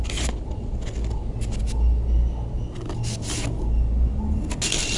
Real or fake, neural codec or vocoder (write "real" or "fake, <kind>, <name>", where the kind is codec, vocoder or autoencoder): real